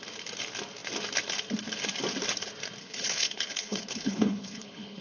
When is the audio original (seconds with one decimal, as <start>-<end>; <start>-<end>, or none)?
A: 0.0-2.8